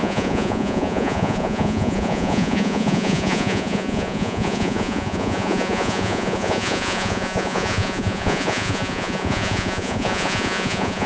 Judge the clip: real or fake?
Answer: fake